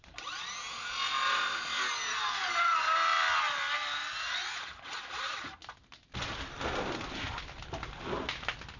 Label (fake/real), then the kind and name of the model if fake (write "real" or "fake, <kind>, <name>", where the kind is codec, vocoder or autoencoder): real